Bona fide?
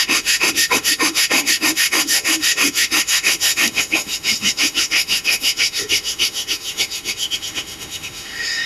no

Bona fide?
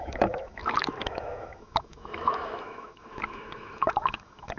no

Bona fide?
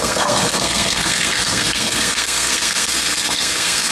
no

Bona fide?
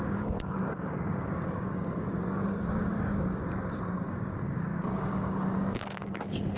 no